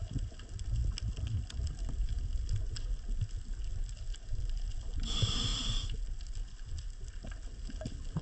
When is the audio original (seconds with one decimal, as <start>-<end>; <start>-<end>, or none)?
0.0-8.2